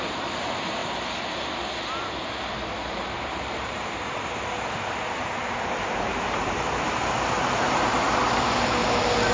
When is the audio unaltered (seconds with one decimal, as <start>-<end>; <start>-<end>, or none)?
0.8-3.2